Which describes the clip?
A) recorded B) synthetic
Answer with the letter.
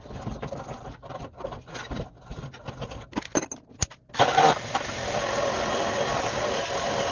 A